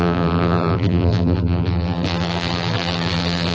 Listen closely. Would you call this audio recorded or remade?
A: remade